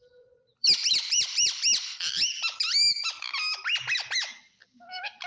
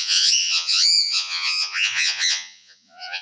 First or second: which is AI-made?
second